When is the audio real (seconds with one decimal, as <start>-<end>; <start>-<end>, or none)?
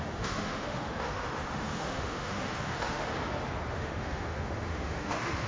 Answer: 3.1-3.7